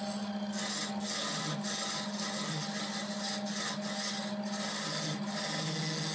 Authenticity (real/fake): real